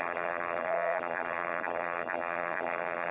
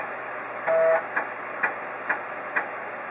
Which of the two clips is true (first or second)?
second